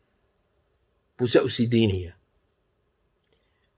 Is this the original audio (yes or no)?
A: no